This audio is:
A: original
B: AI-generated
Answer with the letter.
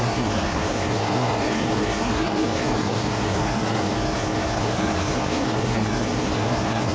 B